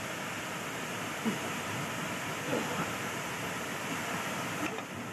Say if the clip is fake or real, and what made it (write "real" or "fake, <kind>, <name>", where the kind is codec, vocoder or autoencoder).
real